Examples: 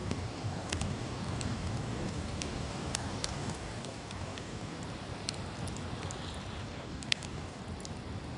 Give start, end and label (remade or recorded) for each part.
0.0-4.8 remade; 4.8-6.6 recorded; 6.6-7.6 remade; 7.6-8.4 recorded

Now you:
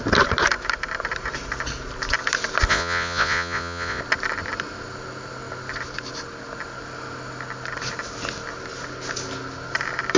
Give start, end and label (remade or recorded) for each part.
0.0-2.7 recorded; 2.7-4.0 remade; 4.0-10.2 recorded

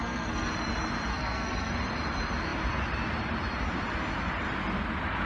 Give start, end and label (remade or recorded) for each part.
0.0-0.5 remade; 0.5-1.1 recorded; 1.1-1.7 remade; 1.7-5.3 recorded

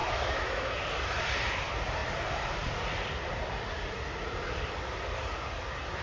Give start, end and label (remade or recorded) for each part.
0.0-0.7 remade; 0.7-6.0 recorded

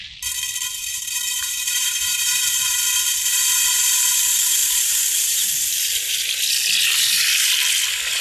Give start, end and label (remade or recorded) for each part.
0.0-0.8 recorded; 0.8-2.6 remade; 2.6-4.6 recorded; 4.6-5.5 remade; 5.5-8.2 recorded

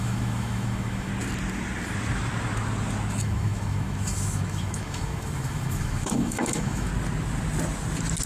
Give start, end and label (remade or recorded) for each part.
0.0-1.1 remade; 1.1-3.2 recorded; 3.2-6.9 remade; 6.9-8.3 recorded

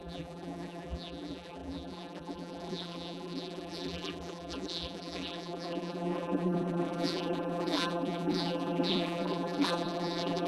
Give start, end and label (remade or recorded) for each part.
0.0-10.5 remade